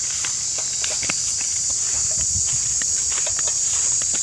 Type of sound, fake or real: real